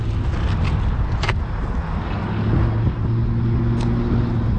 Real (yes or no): yes